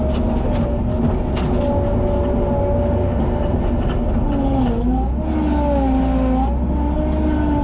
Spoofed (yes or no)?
no